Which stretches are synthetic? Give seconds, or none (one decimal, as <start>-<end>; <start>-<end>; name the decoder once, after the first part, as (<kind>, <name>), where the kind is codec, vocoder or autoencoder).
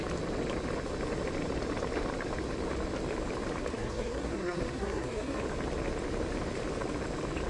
3.7-5.4 (codec, SNAC)